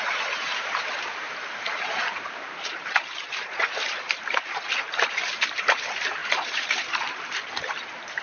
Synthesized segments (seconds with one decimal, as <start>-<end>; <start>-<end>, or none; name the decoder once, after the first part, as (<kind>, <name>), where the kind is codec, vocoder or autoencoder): 0.0-8.2 (vocoder, BigVGAN v2)